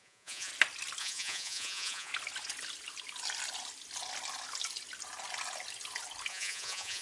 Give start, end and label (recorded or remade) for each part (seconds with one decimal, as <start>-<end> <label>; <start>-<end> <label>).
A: 0.0-0.5 remade; 0.5-1.0 recorded; 1.0-2.1 remade; 2.1-6.3 recorded; 6.3-7.0 remade